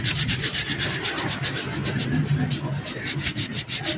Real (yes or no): yes